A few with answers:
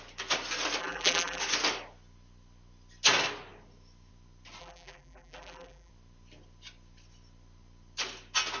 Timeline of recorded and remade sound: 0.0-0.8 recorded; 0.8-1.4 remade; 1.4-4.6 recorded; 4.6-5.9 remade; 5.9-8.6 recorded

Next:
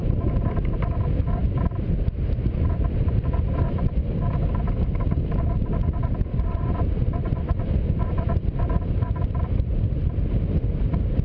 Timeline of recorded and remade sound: 0.0-0.9 remade; 0.9-1.4 recorded; 1.4-4.2 remade; 4.2-7.2 recorded; 7.2-10.2 remade; 10.2-11.2 recorded